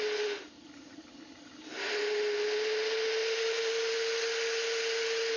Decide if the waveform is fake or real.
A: real